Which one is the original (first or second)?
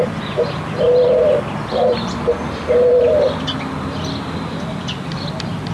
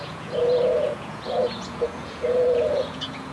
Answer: first